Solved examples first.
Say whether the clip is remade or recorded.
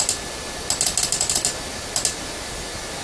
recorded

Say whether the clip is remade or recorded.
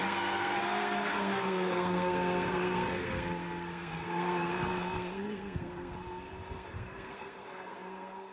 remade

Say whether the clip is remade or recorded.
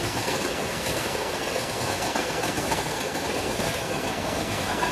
remade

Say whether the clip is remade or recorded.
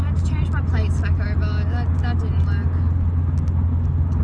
recorded